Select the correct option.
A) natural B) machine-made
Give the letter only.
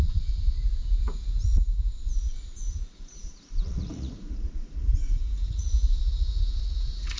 B